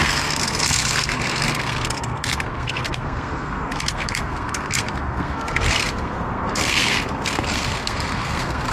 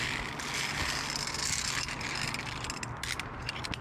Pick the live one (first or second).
second